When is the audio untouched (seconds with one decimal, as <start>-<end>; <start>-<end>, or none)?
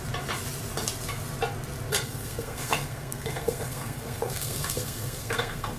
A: 0.0-1.9